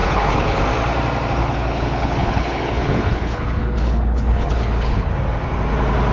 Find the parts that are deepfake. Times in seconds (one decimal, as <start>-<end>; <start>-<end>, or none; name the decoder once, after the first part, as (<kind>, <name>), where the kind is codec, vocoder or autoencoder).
0.0-0.6 (codec, HILCodec); 1.4-5.1